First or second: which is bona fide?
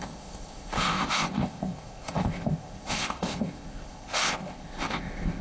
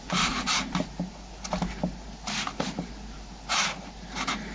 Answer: second